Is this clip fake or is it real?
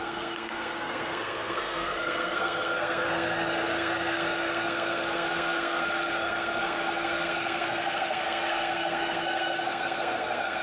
fake